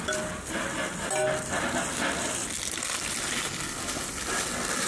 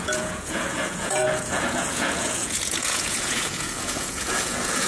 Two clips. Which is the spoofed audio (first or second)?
second